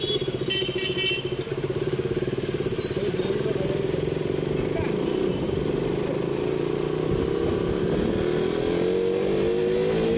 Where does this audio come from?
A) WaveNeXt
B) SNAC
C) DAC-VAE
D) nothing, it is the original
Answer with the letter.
D